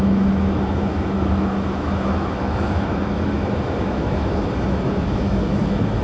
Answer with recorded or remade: remade